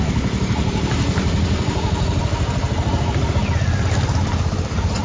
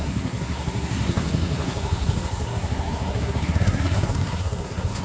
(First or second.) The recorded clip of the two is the first